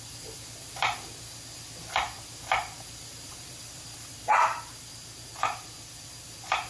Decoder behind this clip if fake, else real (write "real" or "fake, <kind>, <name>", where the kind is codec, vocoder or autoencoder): fake, vocoder, BigVGAN v2